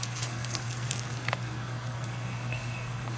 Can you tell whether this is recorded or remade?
remade